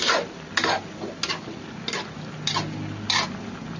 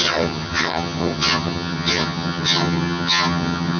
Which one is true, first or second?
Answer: first